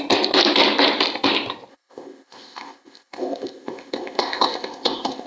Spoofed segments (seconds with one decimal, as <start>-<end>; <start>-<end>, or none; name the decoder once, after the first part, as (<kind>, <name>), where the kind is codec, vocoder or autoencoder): 1.7-5.3 (codec, ZipCodec)